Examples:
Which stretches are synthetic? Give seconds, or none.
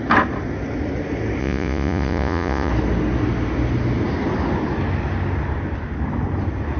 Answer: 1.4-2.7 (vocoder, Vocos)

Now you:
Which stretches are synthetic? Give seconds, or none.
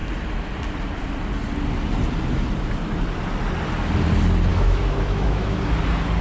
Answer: 4.5-5.6 (autoencoder, DAC-VAE)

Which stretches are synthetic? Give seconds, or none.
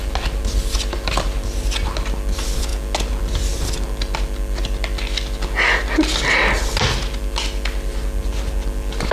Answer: none